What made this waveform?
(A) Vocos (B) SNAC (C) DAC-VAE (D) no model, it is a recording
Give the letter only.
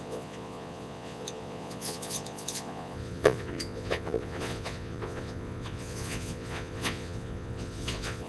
A